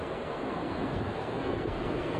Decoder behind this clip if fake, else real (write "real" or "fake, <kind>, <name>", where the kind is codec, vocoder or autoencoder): fake, codec, SNAC